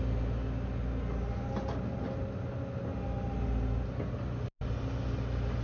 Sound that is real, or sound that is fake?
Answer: real